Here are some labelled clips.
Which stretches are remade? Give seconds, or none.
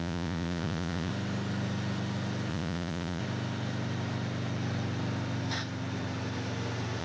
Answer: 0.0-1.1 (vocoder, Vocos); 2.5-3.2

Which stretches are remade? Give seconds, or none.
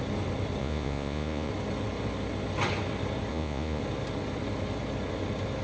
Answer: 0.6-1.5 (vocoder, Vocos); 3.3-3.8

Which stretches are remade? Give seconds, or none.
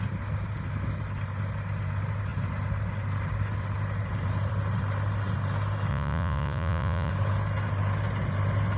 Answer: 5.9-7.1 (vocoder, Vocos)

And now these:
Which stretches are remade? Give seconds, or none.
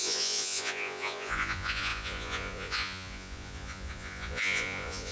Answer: 0.0-5.1 (vocoder, Vocos)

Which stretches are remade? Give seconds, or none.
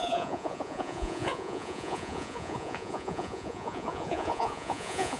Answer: 0.0-5.2 (vocoder, Vocos)